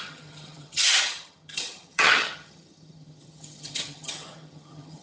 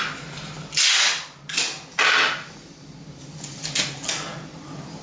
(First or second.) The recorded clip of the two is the second